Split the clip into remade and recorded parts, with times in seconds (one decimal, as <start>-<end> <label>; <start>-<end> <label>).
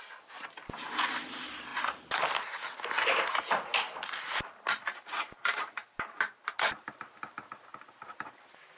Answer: 0.0-8.8 recorded